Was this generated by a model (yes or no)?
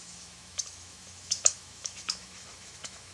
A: yes